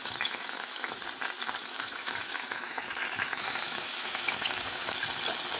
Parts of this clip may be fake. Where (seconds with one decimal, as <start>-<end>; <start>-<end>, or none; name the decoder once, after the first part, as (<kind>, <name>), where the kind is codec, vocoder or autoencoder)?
0.0-1.0 (autoencoder, DAC-VAE); 1.6-5.0

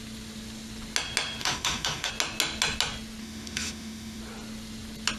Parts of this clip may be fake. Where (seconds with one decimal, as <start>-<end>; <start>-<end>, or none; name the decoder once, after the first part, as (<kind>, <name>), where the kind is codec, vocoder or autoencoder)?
1.4-2.1 (autoencoder, DAC-VAE); 3.2-4.2

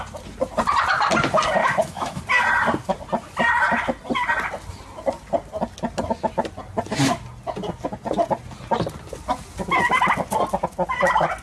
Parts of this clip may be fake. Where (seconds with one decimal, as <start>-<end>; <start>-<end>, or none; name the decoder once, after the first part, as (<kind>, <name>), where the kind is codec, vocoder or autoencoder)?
1.6-2.2 (autoencoder, DAC-VAE)

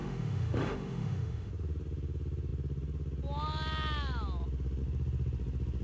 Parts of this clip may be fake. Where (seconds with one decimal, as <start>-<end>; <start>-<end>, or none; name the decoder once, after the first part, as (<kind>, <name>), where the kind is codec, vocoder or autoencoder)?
0.0-1.5 (autoencoder, DAC-VAE)

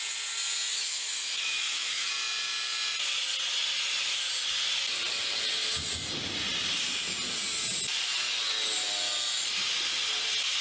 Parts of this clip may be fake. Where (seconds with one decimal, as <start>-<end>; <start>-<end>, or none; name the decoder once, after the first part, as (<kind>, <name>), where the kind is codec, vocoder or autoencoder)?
0.7-2.1 (autoencoder, DAC-VAE)

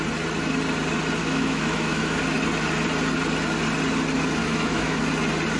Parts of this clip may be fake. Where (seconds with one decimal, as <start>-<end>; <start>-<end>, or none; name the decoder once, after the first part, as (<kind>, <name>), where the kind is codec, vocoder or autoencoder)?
1.2-2.2 (autoencoder, DAC-VAE); 4.4-5.0

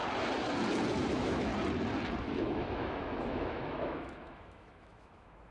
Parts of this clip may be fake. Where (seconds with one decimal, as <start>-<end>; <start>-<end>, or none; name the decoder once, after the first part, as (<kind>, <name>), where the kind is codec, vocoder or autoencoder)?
1.1-1.5 (autoencoder, DAC-VAE); 2.2-5.5

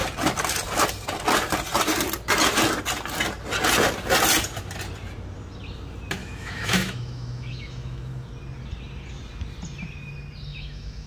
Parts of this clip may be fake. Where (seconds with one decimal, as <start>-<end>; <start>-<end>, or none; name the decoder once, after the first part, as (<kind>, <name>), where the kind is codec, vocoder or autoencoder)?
6.2-8.3 (autoencoder, DAC-VAE); 10.5-11.1